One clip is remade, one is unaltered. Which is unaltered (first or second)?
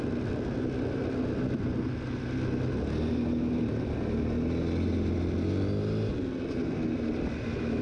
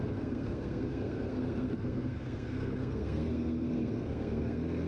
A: first